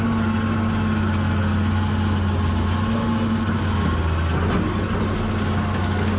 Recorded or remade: recorded